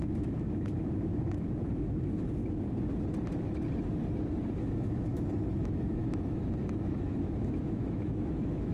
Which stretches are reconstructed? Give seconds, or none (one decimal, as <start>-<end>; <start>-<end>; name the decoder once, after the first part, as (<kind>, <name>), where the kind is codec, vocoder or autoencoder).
0.0-2.4 (autoencoder, DAC-VAE); 4.5-8.7